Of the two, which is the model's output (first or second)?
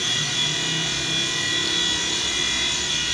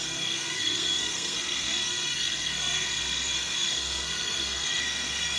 second